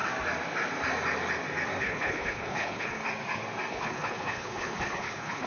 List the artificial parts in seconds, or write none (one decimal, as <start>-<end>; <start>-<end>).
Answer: 1.8-3.0; 3.7-5.5